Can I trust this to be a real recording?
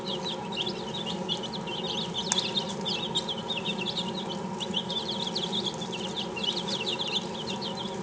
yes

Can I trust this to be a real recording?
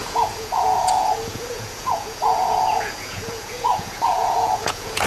no